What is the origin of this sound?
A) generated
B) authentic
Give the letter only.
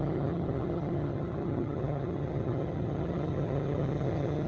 A